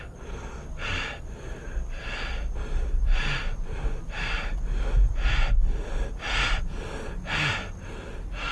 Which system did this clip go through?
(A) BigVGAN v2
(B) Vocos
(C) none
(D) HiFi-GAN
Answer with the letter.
C